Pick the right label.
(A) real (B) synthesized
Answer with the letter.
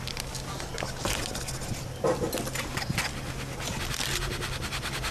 A